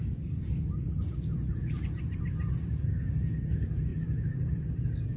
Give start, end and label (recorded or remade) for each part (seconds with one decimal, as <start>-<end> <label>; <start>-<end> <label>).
0.0-1.1 recorded; 1.1-3.3 remade; 3.3-3.9 recorded; 3.9-4.7 remade; 4.7-5.2 recorded